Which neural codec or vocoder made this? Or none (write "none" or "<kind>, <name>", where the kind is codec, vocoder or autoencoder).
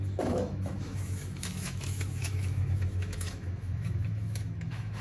autoencoder, DAC-VAE